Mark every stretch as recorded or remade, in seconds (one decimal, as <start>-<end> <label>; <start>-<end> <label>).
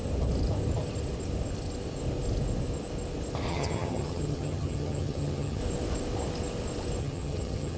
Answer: 0.0-3.5 recorded; 3.5-5.6 remade; 5.6-7.0 recorded; 7.0-7.8 remade